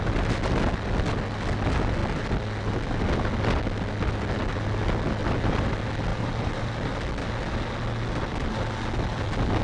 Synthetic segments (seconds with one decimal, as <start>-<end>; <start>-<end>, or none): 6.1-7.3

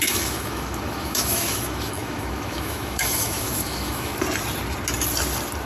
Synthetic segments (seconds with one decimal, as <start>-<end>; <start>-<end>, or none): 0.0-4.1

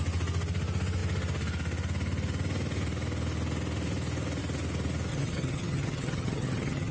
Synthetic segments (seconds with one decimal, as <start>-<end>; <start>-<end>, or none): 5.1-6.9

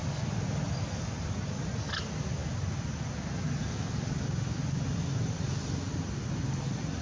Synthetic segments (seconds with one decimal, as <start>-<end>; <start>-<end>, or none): 0.0-1.0; 3.6-5.6

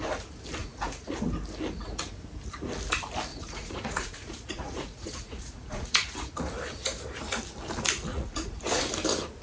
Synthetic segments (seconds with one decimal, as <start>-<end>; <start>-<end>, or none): 0.6-1.2; 3.3-6.3; 8.1-8.8

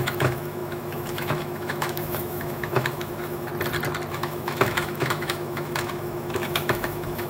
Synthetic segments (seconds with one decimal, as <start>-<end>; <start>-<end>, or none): 0.0-3.5; 4.1-7.3

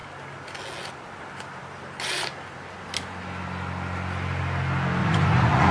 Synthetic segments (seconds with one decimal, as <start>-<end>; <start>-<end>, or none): 5.0-5.7